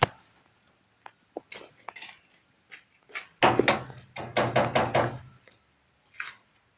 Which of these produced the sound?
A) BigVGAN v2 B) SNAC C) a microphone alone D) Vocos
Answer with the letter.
C